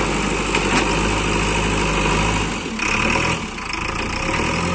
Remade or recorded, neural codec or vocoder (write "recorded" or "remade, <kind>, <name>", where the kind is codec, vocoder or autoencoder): recorded